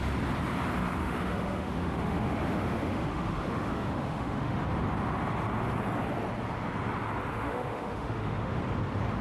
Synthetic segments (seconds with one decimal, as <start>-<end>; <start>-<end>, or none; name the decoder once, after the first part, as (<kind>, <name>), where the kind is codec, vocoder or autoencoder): 1.0-4.6 (autoencoder, DAC-VAE); 7.3-8.6